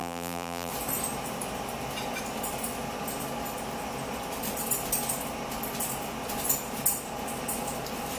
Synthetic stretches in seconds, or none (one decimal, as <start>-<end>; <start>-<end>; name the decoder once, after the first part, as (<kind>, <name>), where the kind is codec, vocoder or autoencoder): 0.0-0.7 (vocoder, BigVGAN v2)